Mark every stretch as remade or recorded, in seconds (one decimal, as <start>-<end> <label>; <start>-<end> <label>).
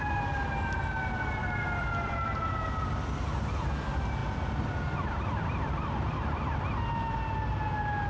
0.0-1.4 recorded; 1.4-2.4 remade; 2.4-8.1 recorded